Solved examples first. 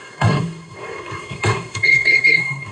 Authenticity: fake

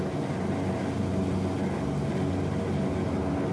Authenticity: real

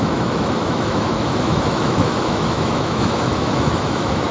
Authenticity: fake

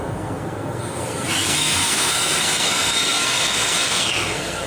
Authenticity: fake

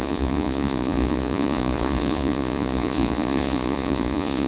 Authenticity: fake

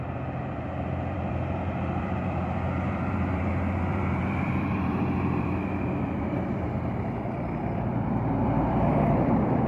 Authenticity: fake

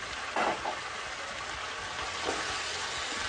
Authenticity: real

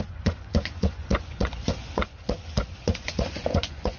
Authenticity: fake